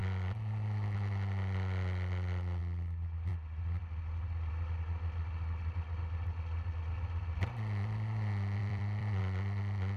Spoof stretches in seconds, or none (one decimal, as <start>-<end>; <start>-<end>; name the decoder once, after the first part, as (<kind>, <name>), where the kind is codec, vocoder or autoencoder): 8.6-9.2 (vocoder, BigVGAN v2)